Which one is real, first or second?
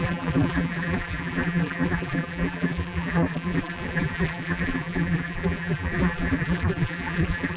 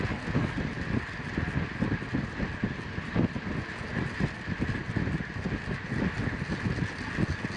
second